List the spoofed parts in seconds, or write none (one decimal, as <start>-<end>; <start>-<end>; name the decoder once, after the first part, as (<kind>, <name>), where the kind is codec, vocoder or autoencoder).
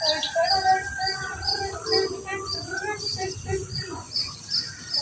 3.1-4.4 (vocoder, Vocos)